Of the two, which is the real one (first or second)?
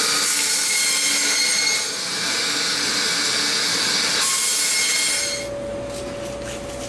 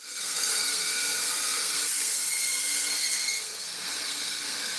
first